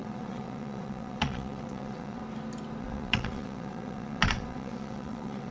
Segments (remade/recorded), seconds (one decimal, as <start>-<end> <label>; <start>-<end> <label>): 0.0-2.2 remade; 2.2-2.8 recorded; 2.8-5.5 remade